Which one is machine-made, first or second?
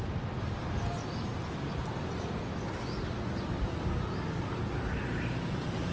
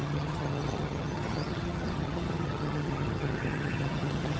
second